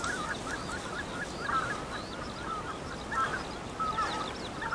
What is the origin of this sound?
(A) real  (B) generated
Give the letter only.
A